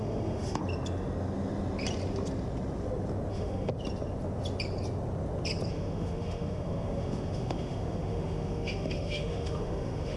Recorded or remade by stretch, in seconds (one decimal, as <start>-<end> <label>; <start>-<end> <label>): 0.0-0.6 remade; 0.6-3.3 recorded; 3.3-3.7 remade; 3.7-5.7 recorded; 5.7-10.2 remade